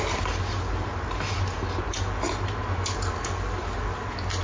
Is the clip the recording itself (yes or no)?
yes